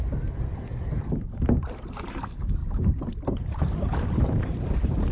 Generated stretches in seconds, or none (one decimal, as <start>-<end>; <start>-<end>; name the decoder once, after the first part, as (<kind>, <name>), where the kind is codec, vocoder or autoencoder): 0.0-0.5 (vocoder, BigVGAN v2); 1.8-2.6; 3.2-5.1